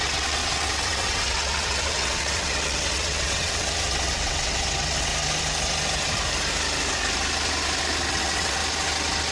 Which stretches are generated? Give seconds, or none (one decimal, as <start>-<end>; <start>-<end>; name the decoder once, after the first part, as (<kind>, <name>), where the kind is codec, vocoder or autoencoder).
0.0-5.1 (vocoder, WaveNeXt); 8.1-8.6